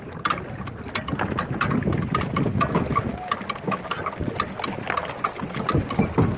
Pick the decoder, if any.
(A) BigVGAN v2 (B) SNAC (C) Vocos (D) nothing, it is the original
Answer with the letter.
D